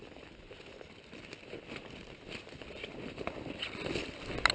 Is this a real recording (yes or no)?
yes